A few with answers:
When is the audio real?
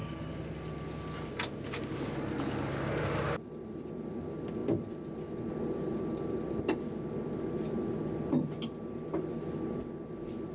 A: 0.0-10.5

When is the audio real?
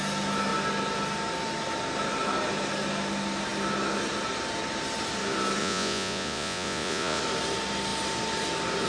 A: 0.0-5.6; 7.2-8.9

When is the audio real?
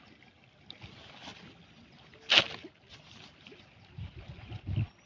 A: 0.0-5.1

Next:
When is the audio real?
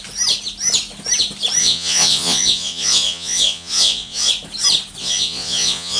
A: 0.0-1.6; 4.3-5.0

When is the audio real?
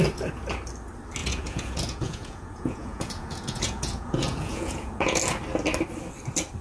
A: 0.0-1.2; 5.2-6.6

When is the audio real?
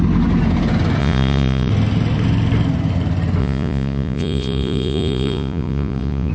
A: 0.0-1.0; 1.7-3.4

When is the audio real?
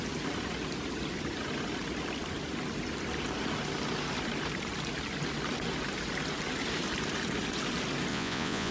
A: 0.0-8.1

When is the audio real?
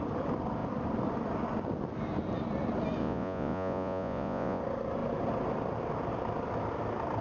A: 0.0-3.0; 4.6-7.2